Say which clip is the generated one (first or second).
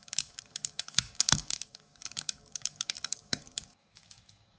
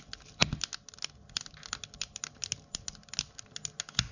first